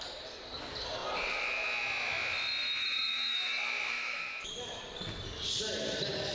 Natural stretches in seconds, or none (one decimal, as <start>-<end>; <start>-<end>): 0.0-2.8; 4.8-6.3